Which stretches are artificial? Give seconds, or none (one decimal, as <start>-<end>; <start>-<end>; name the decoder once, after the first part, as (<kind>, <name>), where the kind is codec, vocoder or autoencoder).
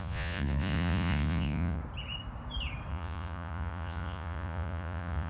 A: 0.0-1.8 (vocoder, Vocos); 2.9-5.3